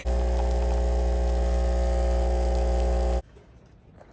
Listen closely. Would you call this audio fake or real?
real